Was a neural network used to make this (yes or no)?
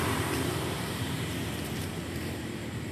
yes